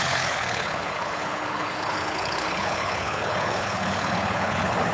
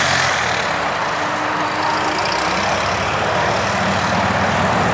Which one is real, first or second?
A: second